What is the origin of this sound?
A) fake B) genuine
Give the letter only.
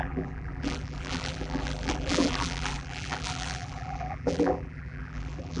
A